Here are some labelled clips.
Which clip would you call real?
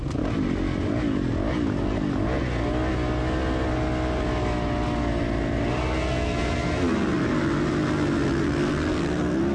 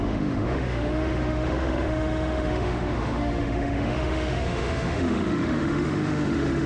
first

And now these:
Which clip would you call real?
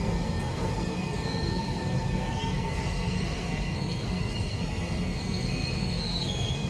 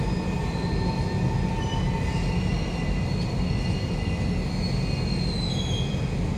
second